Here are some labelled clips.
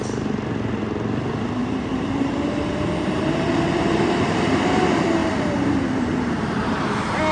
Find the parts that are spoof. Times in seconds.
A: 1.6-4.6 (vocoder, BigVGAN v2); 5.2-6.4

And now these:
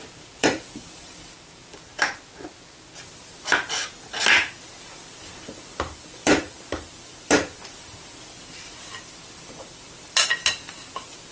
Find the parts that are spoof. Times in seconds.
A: 0.0-1.7 (vocoder, BigVGAN v2); 4.6-11.3

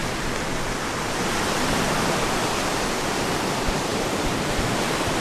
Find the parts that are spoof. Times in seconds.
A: 3.1-5.2 (vocoder, BigVGAN v2)

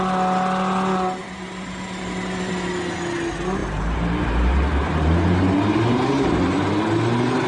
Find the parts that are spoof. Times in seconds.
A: 1.2-2.5 (vocoder, BigVGAN v2); 3.6-6.7

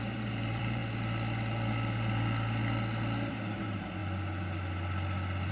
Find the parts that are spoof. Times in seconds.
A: 0.0-0.8 (vocoder, BigVGAN v2); 3.3-4.0